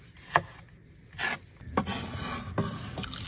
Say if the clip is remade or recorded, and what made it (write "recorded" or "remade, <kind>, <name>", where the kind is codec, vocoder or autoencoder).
recorded